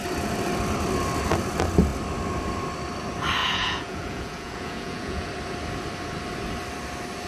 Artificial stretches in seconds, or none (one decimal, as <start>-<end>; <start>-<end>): 3.4-5.3